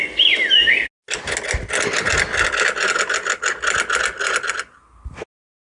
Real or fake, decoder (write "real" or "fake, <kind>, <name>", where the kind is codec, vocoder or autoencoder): real